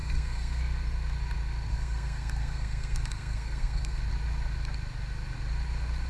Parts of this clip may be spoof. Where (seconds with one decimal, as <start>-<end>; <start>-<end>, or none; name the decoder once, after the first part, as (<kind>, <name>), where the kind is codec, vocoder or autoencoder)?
0.0-0.6 (codec, SNAC); 1.7-4.0